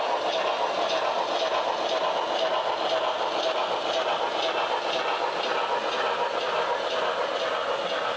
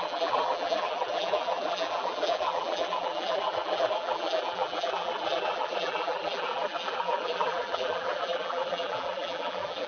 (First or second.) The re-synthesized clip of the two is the second